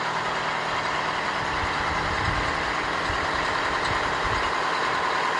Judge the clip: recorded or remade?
recorded